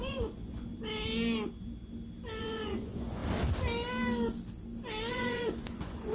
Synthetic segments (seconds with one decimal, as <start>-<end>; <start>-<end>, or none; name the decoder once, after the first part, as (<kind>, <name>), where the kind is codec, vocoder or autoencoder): 0.0-0.7 (vocoder, Vocos); 2.4-3.2; 5.1-6.1